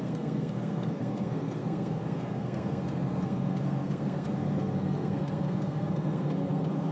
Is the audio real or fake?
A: fake